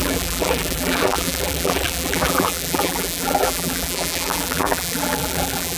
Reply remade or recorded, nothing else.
remade